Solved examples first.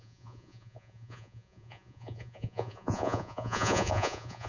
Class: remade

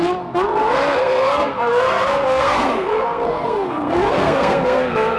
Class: remade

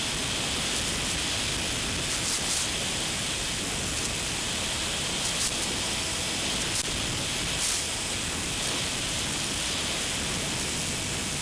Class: recorded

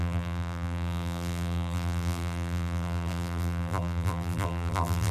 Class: remade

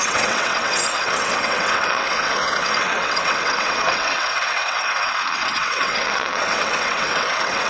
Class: remade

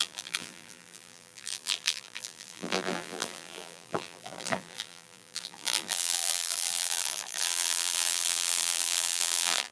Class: remade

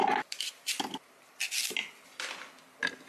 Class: recorded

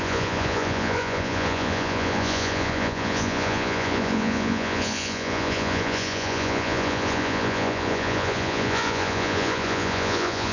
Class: remade